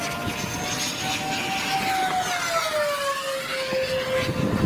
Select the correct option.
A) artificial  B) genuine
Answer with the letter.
B